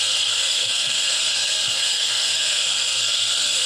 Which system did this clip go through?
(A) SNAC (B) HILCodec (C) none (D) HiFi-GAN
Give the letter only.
A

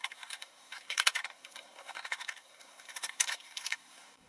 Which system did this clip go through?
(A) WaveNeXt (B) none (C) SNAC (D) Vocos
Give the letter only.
C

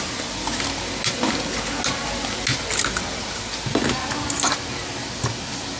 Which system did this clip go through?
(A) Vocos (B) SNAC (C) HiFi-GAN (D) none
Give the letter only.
D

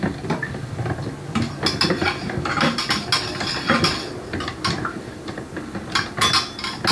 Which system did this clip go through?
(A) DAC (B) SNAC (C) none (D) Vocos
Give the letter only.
C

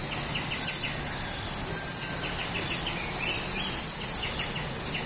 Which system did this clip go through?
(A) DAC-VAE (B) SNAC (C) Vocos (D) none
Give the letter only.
D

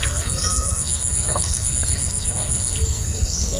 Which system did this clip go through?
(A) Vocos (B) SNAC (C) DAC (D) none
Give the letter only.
B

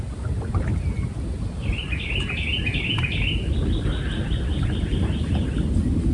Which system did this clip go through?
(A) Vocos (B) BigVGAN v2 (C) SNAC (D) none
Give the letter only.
D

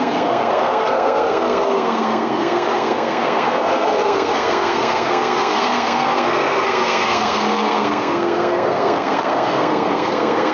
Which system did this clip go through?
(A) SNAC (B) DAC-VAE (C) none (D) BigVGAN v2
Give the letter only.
A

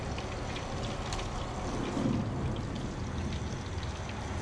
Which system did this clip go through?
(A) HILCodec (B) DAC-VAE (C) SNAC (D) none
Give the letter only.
D